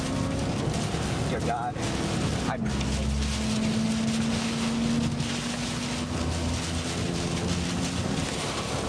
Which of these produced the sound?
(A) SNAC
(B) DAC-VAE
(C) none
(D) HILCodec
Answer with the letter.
C